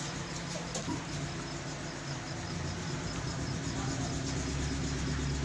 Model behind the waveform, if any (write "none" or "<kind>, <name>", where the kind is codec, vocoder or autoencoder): none